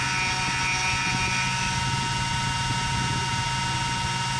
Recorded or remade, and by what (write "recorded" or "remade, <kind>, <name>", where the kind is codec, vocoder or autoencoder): recorded